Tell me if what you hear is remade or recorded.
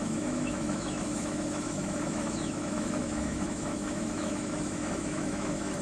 remade